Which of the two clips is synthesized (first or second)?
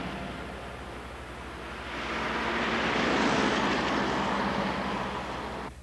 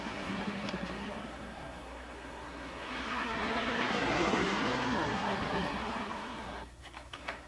second